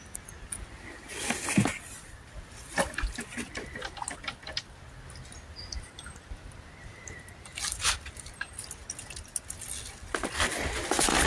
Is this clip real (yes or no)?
yes